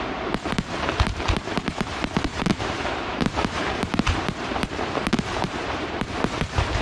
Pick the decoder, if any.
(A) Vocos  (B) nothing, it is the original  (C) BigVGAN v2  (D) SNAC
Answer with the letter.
C